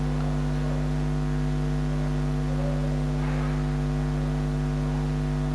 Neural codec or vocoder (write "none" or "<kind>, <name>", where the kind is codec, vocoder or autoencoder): none